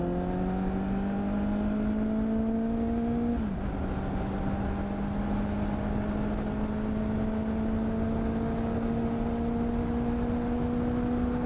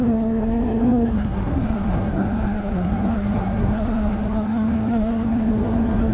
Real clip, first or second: first